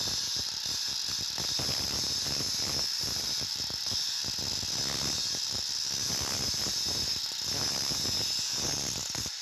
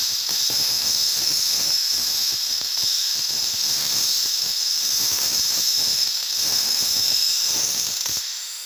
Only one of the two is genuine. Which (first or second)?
first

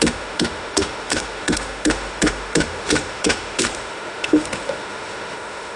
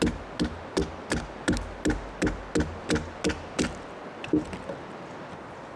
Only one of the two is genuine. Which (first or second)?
second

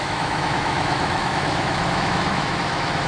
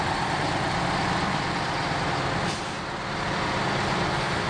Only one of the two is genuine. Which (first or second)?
second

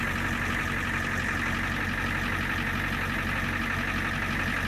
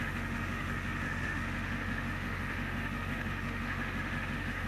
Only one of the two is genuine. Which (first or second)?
first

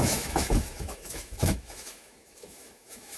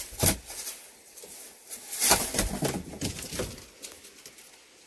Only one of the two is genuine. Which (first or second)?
second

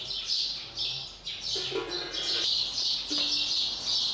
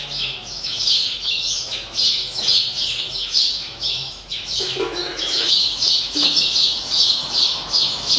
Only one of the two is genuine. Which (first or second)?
first